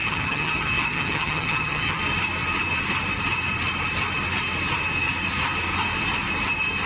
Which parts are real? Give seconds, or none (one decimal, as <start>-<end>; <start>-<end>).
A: 2.0-6.9